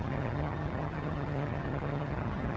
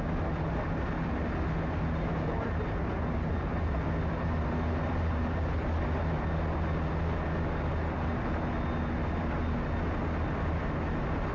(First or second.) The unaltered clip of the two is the second